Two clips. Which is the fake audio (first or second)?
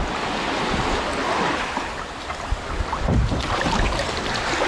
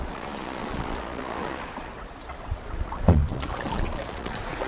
second